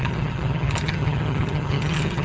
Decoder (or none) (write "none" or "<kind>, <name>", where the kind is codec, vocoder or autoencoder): vocoder, HiFi-GAN